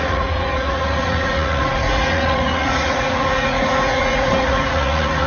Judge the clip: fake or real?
fake